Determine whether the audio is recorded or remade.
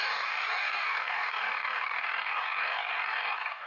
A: remade